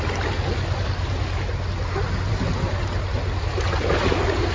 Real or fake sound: real